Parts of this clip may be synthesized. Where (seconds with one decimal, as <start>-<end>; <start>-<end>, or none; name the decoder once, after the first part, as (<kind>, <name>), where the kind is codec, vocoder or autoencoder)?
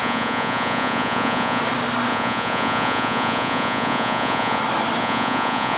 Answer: 0.0-1.6 (vocoder, Vocos); 2.1-4.6; 5.0-5.8